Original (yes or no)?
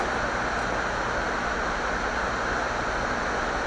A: yes